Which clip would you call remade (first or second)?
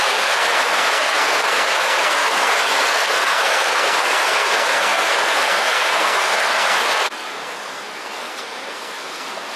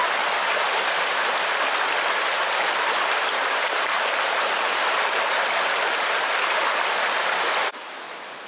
first